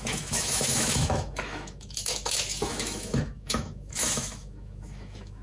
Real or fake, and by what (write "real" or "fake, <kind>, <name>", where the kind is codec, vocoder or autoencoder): fake, autoencoder, DAC-VAE